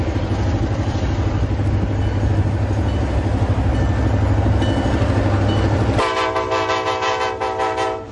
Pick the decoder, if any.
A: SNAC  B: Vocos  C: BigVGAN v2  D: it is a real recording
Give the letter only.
D